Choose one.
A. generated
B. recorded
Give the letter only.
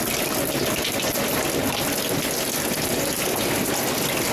B